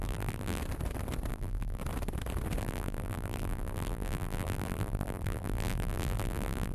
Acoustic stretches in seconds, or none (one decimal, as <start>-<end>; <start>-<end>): 0.6-1.3; 1.8-2.6